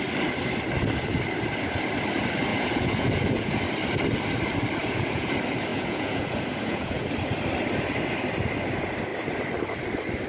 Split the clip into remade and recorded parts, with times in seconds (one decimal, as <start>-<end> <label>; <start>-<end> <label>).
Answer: 0.0-2.5 recorded; 2.5-3.6 remade; 3.6-4.8 recorded; 4.8-5.3 remade; 5.3-5.7 recorded; 5.7-7.1 remade; 7.1-10.3 recorded